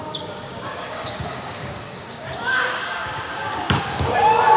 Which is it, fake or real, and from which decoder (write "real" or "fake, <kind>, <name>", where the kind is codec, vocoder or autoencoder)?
fake, codec, DAC